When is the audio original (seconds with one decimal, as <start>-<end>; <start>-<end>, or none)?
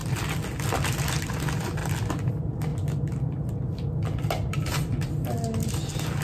0.0-4.7; 5.3-6.2